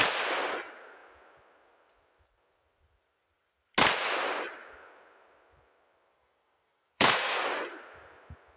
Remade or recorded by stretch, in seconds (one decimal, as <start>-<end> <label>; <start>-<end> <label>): 0.0-6.1 recorded; 6.1-7.4 remade; 7.4-8.6 recorded